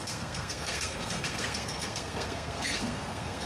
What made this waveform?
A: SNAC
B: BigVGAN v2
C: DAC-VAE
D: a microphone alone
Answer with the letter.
A